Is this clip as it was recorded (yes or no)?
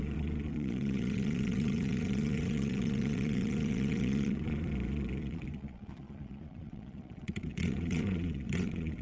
no